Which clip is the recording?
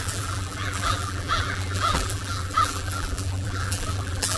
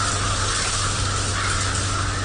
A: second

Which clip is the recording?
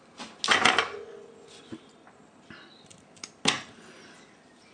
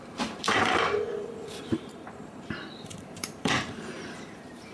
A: first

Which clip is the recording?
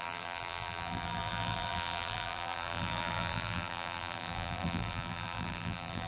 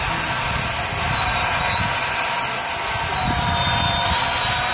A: second